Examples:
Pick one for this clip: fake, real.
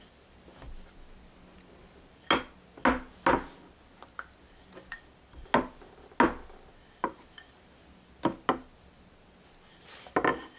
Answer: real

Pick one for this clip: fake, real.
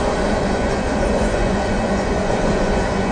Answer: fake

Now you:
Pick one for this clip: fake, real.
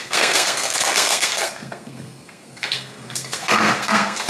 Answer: fake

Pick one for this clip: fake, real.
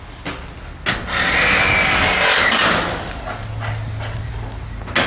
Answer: real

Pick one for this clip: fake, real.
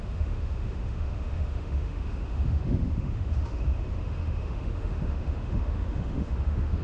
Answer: fake